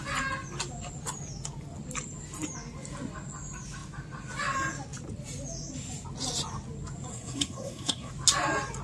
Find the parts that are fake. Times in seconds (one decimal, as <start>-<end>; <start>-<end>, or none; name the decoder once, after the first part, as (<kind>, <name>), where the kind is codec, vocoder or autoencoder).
7.1-8.1 (codec, SNAC)